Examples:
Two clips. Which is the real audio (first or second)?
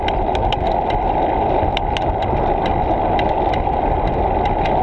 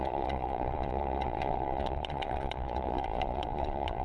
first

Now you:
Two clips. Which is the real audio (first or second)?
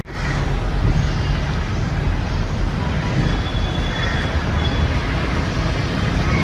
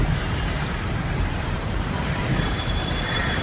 first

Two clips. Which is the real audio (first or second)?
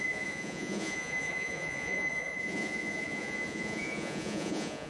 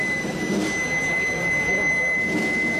second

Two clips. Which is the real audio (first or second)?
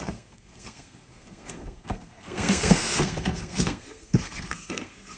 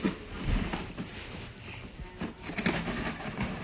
second